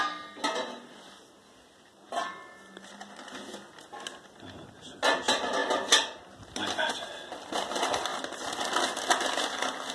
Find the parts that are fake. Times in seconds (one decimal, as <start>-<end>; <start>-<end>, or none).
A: none